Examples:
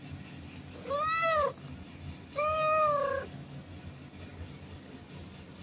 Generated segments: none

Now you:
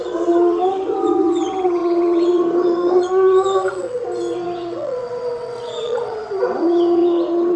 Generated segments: 0.0-7.6 (vocoder, WaveNeXt)